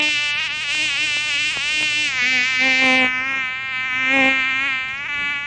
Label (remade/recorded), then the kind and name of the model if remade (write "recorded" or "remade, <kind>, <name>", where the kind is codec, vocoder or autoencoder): recorded